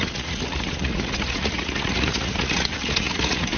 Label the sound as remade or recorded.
remade